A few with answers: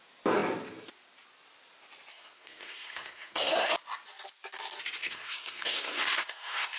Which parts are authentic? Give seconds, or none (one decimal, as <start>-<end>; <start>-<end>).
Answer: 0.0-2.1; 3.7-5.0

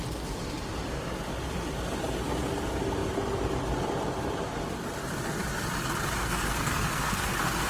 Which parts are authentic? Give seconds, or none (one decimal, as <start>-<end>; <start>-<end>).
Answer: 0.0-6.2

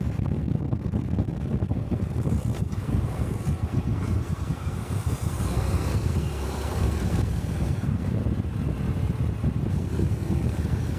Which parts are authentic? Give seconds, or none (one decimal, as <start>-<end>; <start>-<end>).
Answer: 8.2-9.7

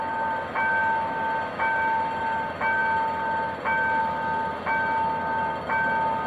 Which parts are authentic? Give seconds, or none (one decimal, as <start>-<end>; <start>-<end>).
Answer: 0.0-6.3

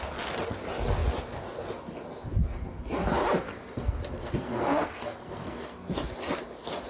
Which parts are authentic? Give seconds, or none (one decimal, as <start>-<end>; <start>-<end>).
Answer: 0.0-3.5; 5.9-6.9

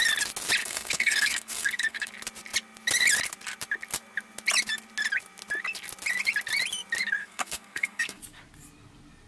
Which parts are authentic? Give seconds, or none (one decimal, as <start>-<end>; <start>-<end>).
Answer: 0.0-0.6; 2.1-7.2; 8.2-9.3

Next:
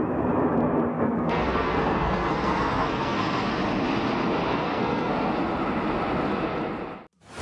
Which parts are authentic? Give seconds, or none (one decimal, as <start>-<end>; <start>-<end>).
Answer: 0.0-0.9; 3.5-4.5; 5.3-7.4